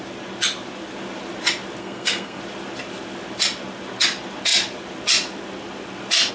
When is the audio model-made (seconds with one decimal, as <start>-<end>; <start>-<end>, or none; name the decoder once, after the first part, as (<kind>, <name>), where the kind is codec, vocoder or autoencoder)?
1.8-2.4 (codec, SNAC)